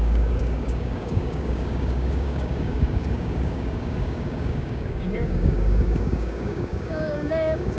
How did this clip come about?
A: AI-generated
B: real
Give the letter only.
A